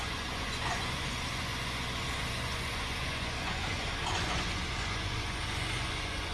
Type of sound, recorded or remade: remade